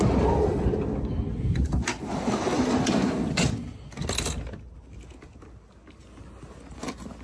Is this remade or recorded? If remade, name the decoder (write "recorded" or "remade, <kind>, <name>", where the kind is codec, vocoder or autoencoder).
recorded